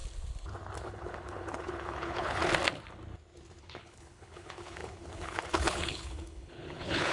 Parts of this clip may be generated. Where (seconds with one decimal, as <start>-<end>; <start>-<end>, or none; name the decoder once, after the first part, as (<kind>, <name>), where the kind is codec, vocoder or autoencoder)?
0.8-2.4 (codec, HILCodec); 3.6-7.1